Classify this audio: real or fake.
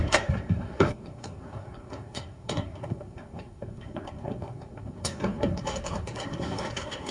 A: fake